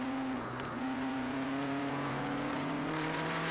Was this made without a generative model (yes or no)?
no